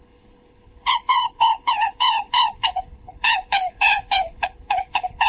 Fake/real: fake